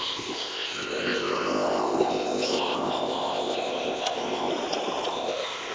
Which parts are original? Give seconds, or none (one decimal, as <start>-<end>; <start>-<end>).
4.5-5.1